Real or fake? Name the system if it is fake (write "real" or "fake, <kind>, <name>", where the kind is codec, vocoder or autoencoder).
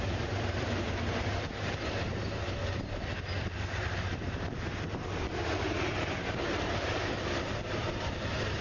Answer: fake, vocoder, BigVGAN v2